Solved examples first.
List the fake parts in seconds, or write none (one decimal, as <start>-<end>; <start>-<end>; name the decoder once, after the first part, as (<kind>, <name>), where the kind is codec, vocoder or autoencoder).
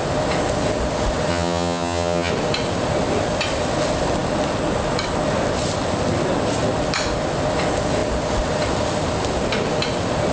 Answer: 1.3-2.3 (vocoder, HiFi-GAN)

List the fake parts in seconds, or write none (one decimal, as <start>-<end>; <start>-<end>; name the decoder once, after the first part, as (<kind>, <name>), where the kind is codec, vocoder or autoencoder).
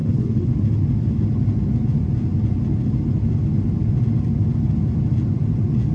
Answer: 0.0-0.5 (codec, HILCodec)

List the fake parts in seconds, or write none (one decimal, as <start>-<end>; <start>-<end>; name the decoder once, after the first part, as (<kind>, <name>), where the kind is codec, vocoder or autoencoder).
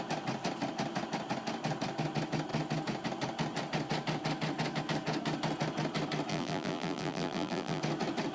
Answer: 6.3-7.8 (vocoder, BigVGAN v2)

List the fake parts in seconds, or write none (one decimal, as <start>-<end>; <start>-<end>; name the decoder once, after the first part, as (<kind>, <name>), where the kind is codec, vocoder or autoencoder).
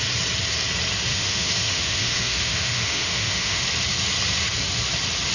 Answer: 1.1-3.6 (autoencoder, DAC-VAE)